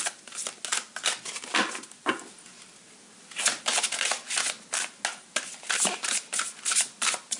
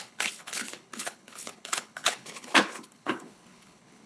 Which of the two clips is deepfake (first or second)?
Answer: second